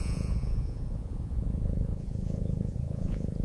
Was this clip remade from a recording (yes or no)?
yes